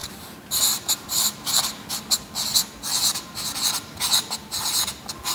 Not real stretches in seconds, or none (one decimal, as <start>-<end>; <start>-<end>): 0.0-1.5